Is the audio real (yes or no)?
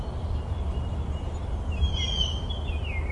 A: yes